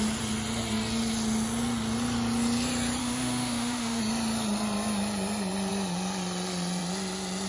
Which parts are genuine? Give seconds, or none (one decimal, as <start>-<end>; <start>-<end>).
0.0-3.0; 4.0-7.5